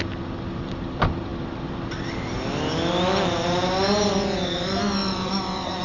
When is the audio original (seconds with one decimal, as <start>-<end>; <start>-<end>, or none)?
0.0-5.8